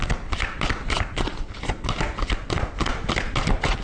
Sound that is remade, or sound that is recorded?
recorded